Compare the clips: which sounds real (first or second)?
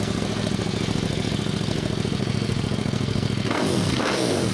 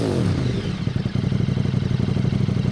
second